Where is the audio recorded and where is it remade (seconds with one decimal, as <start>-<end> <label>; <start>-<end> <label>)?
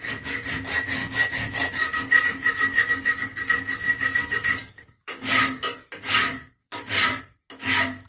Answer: 0.0-1.0 recorded; 1.0-5.4 remade; 5.4-6.6 recorded; 6.6-7.2 remade; 7.2-8.1 recorded